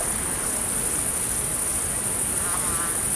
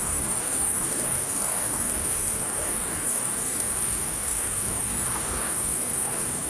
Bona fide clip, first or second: first